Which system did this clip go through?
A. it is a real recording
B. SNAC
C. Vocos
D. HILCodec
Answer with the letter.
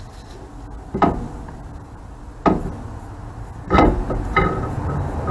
A